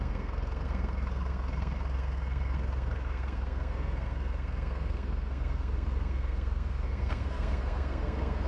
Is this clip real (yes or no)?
no